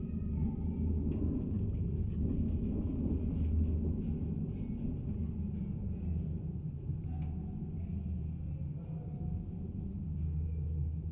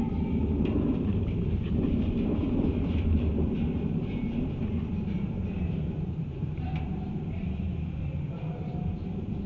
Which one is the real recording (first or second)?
first